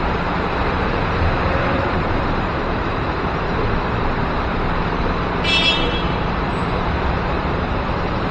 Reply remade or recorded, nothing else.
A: remade